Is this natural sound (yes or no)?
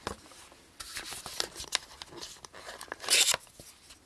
yes